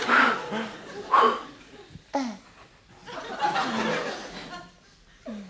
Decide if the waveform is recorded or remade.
recorded